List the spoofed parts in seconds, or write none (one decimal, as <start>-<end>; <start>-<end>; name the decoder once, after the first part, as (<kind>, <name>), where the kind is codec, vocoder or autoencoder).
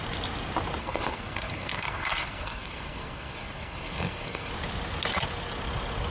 0.8-4.5 (codec, SNAC)